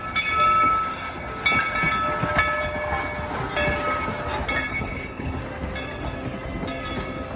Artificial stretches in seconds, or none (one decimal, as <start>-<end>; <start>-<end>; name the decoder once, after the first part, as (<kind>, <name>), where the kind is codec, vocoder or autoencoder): 4.7-5.4 (codec, HILCodec)